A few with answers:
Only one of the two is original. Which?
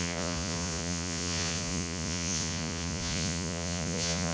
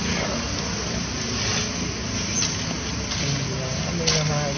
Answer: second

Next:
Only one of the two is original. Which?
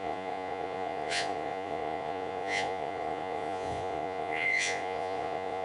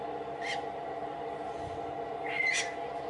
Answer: second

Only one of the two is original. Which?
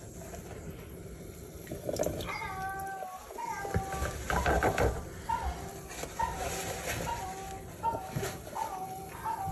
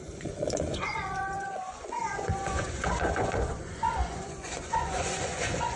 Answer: first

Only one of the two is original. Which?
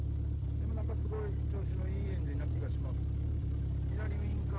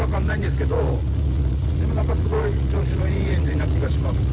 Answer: first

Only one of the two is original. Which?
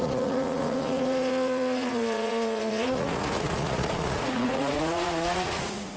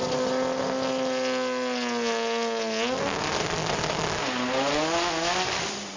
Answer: second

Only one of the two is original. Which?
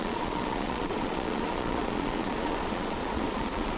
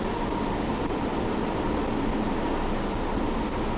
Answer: second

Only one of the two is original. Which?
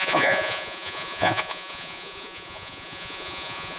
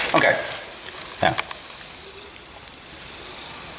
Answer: second